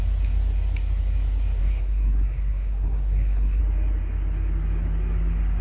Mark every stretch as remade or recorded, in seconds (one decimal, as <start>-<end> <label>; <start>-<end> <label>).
0.0-1.6 recorded; 1.6-3.6 remade; 3.6-5.6 recorded